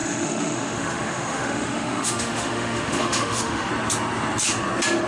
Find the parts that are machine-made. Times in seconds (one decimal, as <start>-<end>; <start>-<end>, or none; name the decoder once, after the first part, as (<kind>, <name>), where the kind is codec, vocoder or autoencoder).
0.0-3.7 (autoencoder, DAC-VAE)